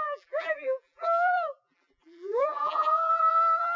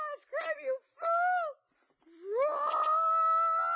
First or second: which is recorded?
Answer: second